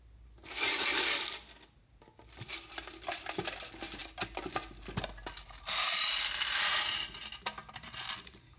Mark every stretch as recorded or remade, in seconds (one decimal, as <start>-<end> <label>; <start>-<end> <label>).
0.0-8.6 recorded